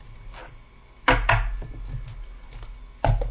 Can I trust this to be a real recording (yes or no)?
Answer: yes